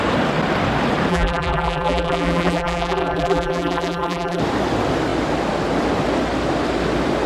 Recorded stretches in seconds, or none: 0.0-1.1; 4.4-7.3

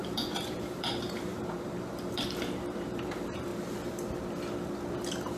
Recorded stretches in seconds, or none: 3.5-5.0

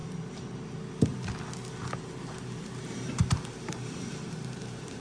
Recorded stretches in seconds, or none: 0.0-2.6

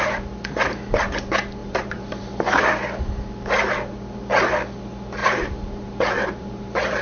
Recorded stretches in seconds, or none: 0.0-1.6; 2.6-5.2

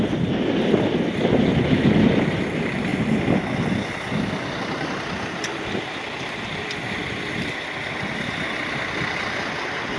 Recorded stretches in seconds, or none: 0.0-10.0